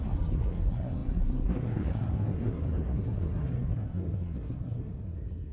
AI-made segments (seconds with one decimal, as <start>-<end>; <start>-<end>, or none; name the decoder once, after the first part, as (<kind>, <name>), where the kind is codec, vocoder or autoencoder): 0.0-5.5 (codec, SNAC)